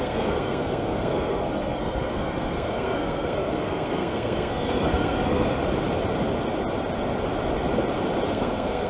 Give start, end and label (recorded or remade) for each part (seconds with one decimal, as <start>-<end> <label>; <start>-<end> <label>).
0.0-5.6 remade; 5.6-8.3 recorded; 8.3-8.9 remade